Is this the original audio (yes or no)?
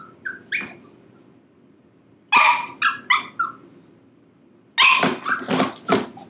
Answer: yes